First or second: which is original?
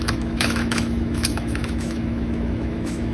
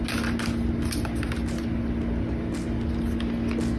second